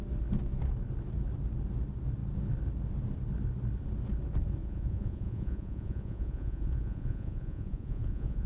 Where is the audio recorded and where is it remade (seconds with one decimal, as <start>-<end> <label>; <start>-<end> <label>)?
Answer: 0.0-4.6 recorded; 4.6-8.5 remade